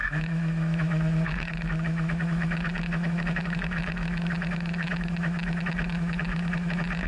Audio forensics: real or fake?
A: fake